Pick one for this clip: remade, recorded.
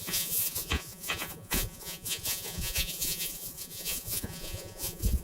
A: remade